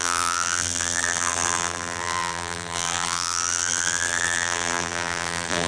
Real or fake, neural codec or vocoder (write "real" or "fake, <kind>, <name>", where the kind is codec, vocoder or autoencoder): fake, vocoder, BigVGAN v2